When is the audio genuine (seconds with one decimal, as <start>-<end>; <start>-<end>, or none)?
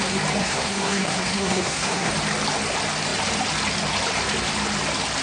0.0-0.4; 2.1-5.2